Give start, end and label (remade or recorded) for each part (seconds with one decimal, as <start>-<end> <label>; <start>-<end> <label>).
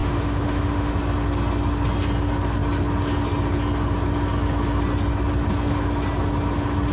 0.0-0.9 remade; 0.9-6.9 recorded